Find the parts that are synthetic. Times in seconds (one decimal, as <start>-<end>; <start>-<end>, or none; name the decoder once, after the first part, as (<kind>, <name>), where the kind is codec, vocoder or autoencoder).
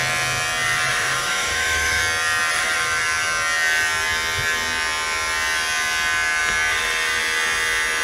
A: 0.9-2.0 (autoencoder, DAC-VAE)